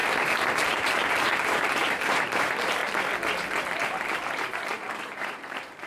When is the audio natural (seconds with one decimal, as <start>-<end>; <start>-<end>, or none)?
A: 2.8-3.6